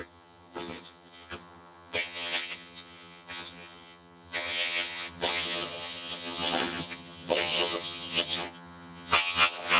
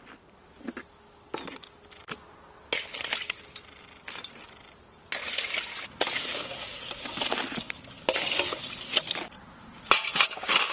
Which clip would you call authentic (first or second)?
second